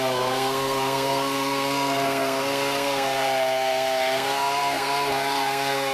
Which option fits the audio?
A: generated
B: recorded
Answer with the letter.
A